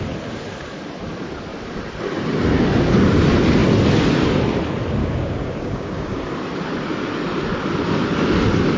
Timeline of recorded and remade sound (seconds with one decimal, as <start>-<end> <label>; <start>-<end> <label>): 0.0-5.0 recorded; 5.0-6.2 remade; 6.2-8.8 recorded